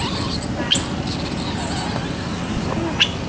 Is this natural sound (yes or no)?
yes